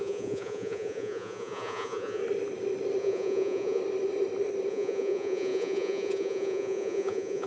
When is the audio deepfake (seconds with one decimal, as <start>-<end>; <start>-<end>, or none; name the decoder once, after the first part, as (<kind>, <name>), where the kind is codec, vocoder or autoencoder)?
0.0-2.2 (vocoder, Vocos); 3.0-3.8; 4.7-7.5